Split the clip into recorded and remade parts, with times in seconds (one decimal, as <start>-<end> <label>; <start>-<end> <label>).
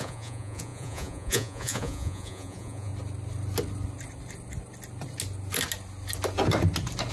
0.0-2.9 remade; 2.9-7.1 recorded